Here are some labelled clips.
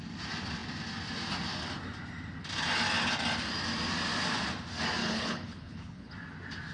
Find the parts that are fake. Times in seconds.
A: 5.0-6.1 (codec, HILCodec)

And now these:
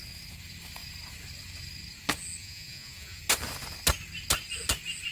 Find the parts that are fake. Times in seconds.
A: 2.4-3.2 (vocoder, Vocos)

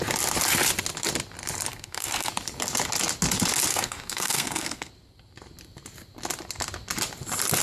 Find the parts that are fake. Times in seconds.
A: 1.7-2.3 (codec, SNAC); 3.7-4.9

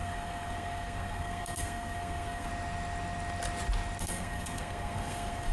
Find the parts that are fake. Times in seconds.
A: 0.0-2.5 (codec, SNAC); 4.0-5.5